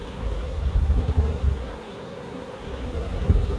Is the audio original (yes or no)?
no